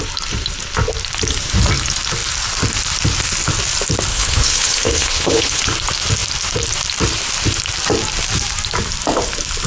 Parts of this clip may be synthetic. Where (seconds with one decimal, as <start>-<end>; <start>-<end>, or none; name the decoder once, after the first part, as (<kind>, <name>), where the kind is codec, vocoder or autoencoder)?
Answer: 4.1-5.6 (codec, HILCodec)